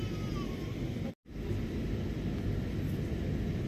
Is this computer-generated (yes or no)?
no